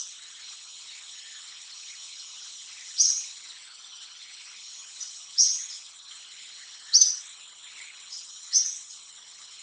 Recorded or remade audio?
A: remade